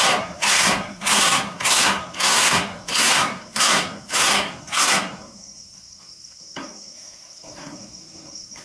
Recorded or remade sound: remade